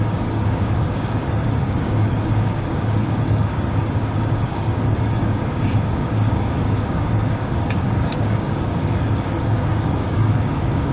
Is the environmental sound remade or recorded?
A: remade